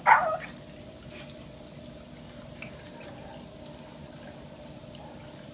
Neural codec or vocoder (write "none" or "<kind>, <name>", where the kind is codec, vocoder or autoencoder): none